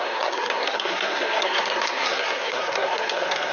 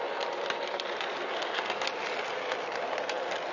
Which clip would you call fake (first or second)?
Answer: first